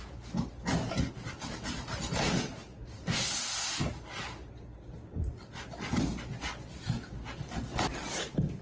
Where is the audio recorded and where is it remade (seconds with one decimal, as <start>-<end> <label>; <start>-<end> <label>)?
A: 0.0-8.6 recorded